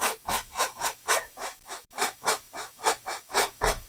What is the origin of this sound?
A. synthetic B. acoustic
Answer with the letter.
A